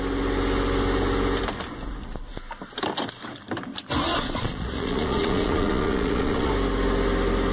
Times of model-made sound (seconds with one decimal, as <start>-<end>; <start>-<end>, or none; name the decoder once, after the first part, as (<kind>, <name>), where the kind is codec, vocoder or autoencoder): 4.1-6.5 (vocoder, Vocos)